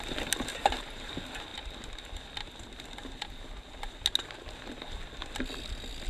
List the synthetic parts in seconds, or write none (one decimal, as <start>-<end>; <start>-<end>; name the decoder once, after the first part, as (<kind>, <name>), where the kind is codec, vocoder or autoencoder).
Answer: 0.5-1.1 (vocoder, BigVGAN v2)